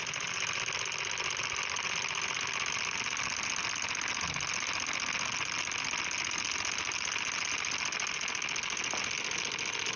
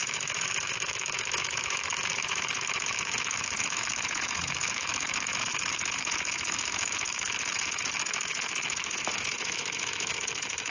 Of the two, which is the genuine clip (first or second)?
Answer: first